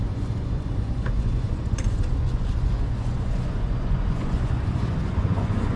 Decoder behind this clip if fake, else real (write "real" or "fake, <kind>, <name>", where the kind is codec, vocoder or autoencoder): fake, vocoder, Vocos